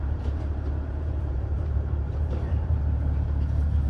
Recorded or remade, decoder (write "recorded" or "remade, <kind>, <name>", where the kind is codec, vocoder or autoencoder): remade, vocoder, BigVGAN v2